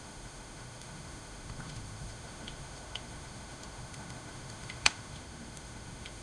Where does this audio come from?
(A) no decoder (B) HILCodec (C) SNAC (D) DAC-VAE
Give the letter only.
D